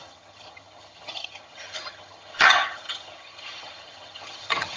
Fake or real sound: fake